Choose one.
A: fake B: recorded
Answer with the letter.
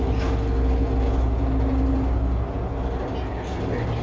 B